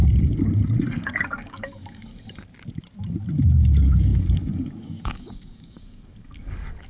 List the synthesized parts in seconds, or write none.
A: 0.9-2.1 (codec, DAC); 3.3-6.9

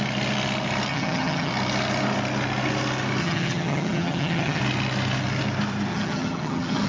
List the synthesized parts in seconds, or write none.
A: 0.9-1.5 (vocoder, HiFi-GAN); 3.2-4.6; 5.9-6.9

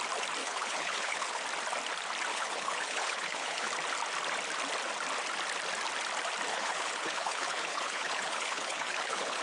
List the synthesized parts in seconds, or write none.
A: 0.4-1.4 (codec, HILCodec); 2.3-3.7; 6.5-9.4

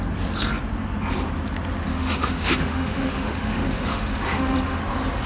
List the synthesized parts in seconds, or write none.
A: 1.9-4.8 (autoencoder, DAC-VAE)

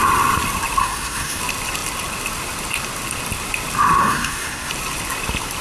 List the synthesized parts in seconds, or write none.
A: 0.8-1.4 (codec, SNAC); 4.0-4.7